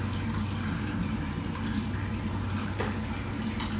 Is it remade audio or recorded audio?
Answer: remade